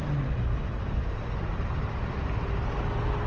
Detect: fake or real real